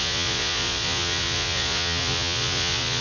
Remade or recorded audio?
remade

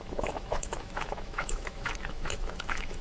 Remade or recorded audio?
remade